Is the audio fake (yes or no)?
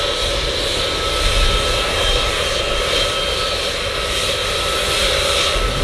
no